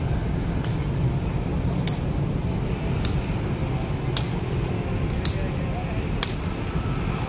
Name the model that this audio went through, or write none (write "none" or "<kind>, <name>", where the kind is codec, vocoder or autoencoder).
none